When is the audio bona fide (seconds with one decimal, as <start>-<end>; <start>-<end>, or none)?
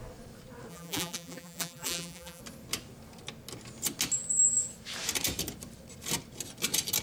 0.0-0.7; 2.4-7.0